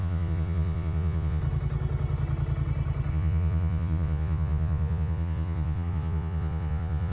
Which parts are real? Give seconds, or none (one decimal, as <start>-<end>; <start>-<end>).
1.4-3.1